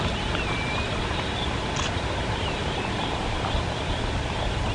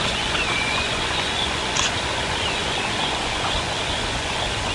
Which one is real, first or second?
first